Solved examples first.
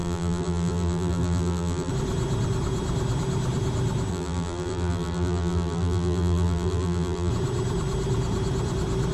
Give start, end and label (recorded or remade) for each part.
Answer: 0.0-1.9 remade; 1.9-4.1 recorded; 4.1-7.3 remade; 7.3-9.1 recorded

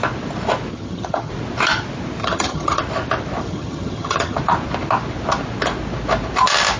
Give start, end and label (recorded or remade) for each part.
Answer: 0.0-0.7 recorded; 0.7-1.3 remade; 1.3-2.2 recorded; 2.2-2.8 remade; 2.8-3.4 recorded; 3.4-4.4 remade; 4.4-6.8 recorded

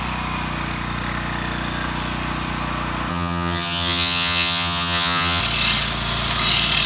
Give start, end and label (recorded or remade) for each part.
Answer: 0.0-3.1 recorded; 3.1-5.4 remade; 5.4-6.9 recorded

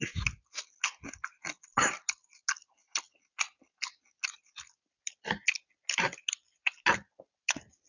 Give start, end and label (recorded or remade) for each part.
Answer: 0.0-7.9 recorded